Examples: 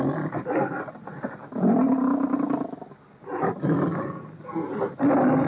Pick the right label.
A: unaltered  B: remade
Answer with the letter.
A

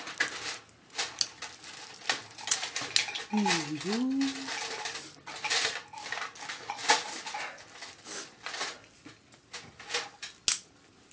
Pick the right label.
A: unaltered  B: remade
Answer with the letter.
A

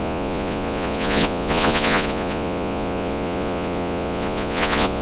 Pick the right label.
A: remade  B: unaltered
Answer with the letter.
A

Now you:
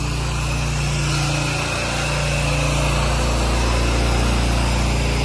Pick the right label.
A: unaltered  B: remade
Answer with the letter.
A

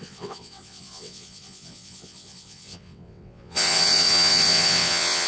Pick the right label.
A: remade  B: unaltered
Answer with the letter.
A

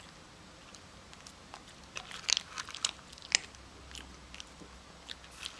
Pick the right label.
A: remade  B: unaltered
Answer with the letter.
B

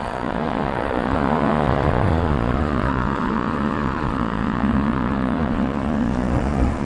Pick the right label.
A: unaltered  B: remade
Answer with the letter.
B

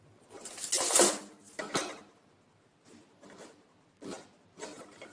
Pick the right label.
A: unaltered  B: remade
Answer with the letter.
A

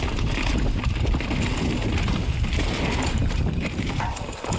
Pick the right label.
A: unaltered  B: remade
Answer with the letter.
A